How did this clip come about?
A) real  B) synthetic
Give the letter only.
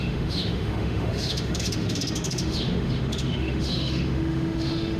B